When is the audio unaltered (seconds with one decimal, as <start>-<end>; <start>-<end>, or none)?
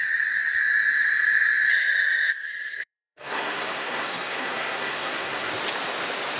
0.0-1.7; 5.5-6.4